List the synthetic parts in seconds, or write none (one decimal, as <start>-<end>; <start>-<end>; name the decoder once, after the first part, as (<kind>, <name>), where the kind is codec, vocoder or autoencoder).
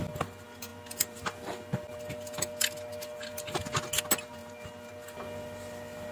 none